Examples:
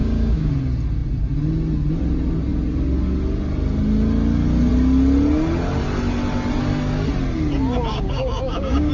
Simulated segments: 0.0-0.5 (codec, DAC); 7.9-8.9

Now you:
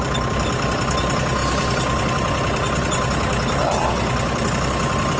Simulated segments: none

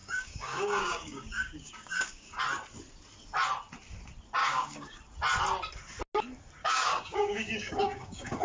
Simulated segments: 0.0-2.4 (codec, DAC); 4.4-5.0; 6.6-8.4

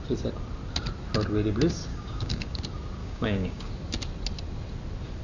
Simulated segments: 1.9-2.6 (codec, DAC); 3.0-3.7

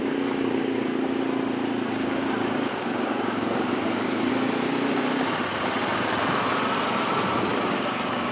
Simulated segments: 0.0-0.9 (codec, DAC); 1.9-4.3; 7.7-8.3

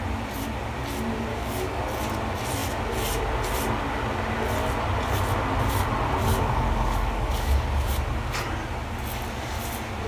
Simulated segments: 1.3-1.8 (codec, DAC); 6.3-7.9

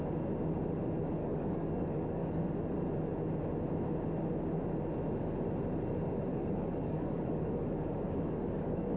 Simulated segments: 1.2-2.4 (codec, DAC); 6.3-9.0